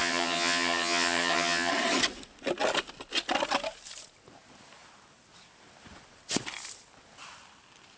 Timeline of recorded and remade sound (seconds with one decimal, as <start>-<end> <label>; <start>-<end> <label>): 0.0-1.7 remade; 1.7-8.0 recorded